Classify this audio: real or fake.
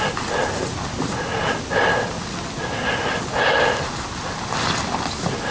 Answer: real